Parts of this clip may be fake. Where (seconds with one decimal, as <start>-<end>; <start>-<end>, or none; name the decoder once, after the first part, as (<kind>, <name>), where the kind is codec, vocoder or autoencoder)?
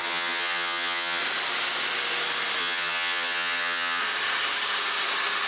0.0-1.2 (vocoder, HiFi-GAN); 2.6-4.0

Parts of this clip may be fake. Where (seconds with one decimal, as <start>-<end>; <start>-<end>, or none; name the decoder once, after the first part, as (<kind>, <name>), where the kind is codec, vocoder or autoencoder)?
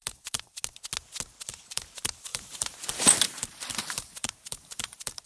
0.0-0.6 (vocoder, BigVGAN v2); 1.4-5.3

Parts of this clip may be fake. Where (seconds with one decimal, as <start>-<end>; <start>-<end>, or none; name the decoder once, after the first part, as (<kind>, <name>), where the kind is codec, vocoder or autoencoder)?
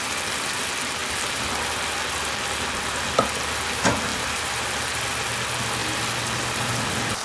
4.1-5.0 (vocoder, BigVGAN v2)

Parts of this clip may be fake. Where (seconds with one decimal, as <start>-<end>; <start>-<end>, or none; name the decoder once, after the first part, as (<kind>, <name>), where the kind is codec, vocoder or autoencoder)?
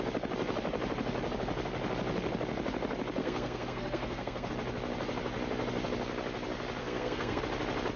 3.2-4.5 (codec, SNAC); 6.8-7.4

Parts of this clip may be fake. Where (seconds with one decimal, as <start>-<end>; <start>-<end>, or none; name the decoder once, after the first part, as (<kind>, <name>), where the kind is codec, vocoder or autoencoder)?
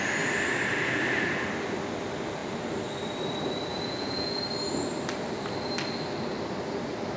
3.7-4.4 (vocoder, Vocos)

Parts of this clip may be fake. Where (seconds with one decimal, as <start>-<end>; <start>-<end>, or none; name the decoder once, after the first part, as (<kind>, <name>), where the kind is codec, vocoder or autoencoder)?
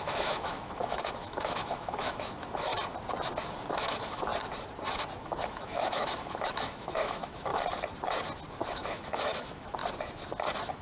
0.0-2.7 (autoencoder, DAC-VAE); 3.7-4.3; 5.2-7.5; 8.7-9.8